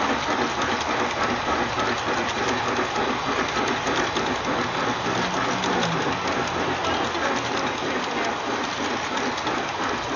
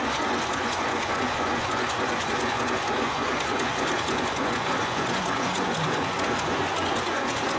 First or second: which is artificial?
second